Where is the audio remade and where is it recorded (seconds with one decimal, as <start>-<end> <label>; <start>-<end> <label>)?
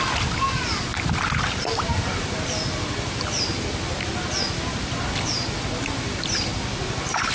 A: 0.0-7.3 recorded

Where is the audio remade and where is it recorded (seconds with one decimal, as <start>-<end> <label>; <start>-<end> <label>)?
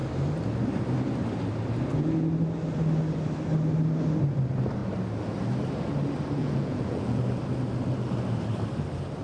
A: 0.0-6.4 recorded; 6.4-7.2 remade; 7.2-9.2 recorded